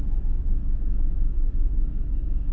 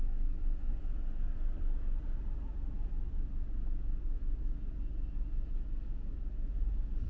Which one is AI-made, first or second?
first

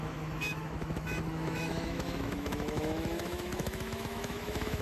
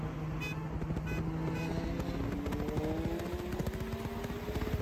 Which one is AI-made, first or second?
first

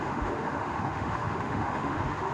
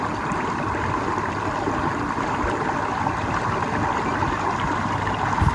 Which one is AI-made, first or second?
first